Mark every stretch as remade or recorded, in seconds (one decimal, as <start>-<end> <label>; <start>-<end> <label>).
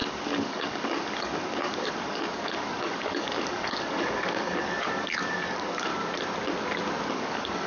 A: 0.0-5.9 remade; 5.9-7.1 recorded; 7.1-7.7 remade